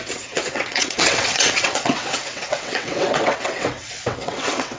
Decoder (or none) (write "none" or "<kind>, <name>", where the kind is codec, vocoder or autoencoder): vocoder, WaveNeXt